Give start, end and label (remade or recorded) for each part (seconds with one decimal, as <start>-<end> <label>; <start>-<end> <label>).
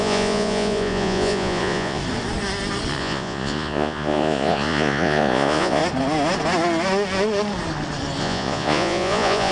0.0-2.0 remade; 2.0-3.0 recorded; 3.0-5.8 remade; 5.8-8.2 recorded; 8.2-9.5 remade